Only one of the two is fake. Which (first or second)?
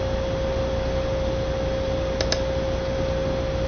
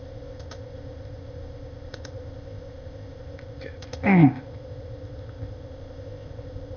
second